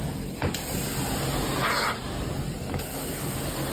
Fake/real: real